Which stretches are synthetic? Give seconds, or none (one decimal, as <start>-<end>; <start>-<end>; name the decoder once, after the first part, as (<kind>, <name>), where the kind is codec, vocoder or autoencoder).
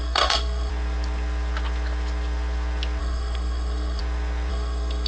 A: 0.0-0.7 (codec, SNAC); 3.0-4.0; 4.5-5.1